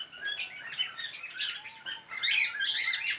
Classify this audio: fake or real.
real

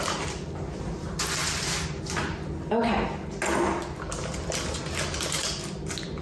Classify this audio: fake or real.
real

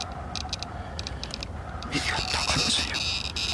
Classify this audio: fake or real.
real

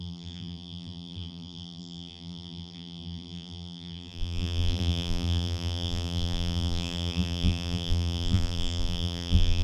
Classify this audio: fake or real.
fake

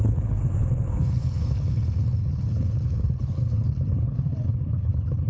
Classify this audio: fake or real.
fake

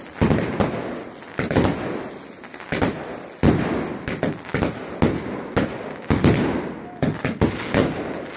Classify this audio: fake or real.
real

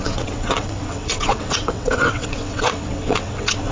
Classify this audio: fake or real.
fake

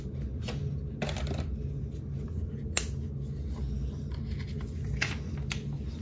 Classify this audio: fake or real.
real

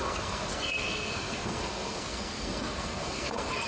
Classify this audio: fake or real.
fake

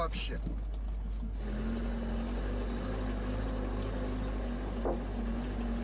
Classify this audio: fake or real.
real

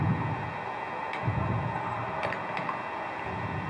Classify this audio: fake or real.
real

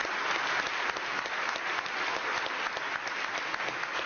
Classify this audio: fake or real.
real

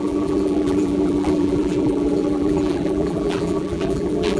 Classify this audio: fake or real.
fake